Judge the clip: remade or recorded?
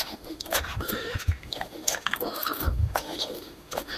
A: remade